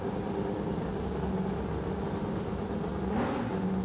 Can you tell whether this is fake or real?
real